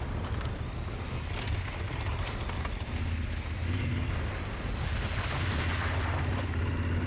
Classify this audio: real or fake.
real